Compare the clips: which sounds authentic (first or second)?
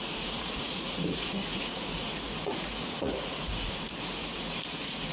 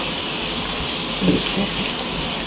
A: second